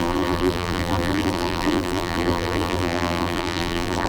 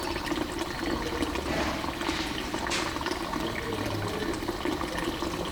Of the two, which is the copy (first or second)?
first